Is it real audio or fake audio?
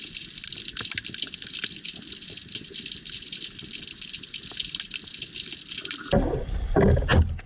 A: real